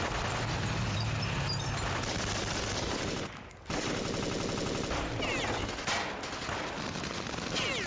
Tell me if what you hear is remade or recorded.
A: recorded